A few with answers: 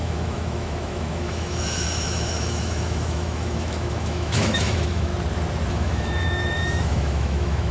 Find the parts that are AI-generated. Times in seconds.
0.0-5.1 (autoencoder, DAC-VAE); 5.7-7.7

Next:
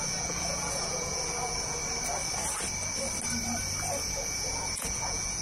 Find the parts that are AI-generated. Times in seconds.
0.0-1.8 (vocoder, Vocos); 4.0-5.4